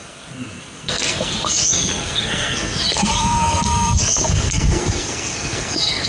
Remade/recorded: remade